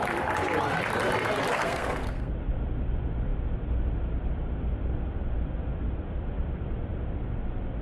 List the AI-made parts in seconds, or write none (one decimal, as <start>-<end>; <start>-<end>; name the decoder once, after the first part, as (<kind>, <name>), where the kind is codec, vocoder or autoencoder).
1.5-2.3 (codec, SNAC)